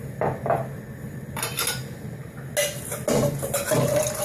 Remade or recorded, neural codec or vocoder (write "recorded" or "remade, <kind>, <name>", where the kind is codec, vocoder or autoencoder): recorded